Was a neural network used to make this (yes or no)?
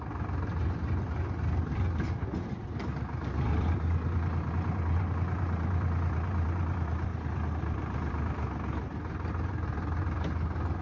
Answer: yes